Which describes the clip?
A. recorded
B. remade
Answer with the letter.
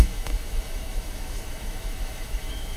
B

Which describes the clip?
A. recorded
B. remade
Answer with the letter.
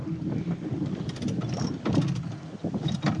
A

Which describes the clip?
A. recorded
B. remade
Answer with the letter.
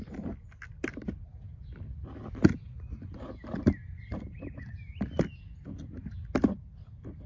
A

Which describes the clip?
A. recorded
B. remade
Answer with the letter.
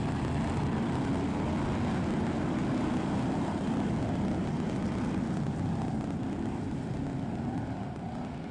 A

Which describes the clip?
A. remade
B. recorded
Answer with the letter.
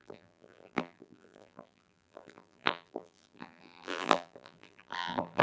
A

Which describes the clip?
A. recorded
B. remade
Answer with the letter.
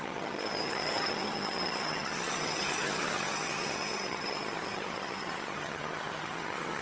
B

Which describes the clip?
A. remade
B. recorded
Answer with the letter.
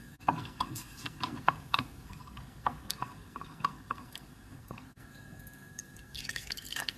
A